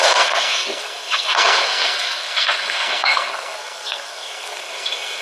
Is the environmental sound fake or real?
fake